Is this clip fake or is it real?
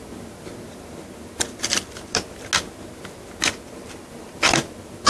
real